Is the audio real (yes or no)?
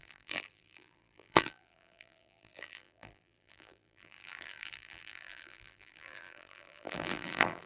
no